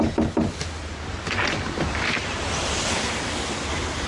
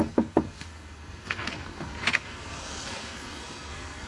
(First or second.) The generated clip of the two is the second